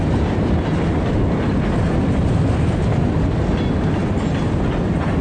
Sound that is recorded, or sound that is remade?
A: recorded